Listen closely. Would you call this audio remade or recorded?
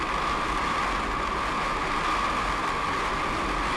recorded